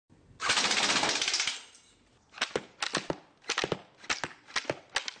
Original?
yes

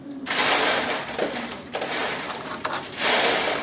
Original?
no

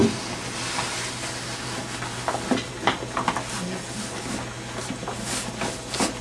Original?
yes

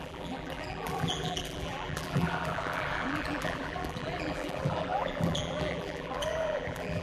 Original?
no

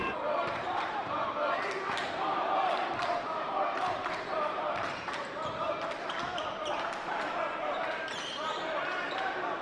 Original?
no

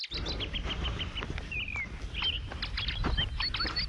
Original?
yes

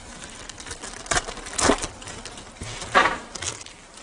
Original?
yes